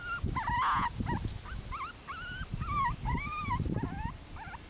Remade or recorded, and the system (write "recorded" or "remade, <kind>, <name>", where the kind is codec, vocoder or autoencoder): recorded